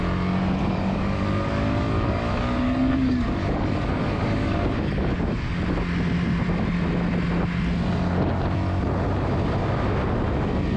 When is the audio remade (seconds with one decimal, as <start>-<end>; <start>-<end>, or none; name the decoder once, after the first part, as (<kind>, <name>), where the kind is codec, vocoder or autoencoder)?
0.6-5.6 (codec, DAC)